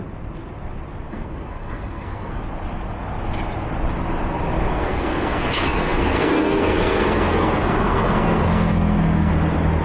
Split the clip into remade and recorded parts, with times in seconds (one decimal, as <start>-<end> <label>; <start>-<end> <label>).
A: 0.0-1.1 recorded; 1.1-2.4 remade; 2.4-4.7 recorded; 4.7-9.3 remade; 9.3-9.8 recorded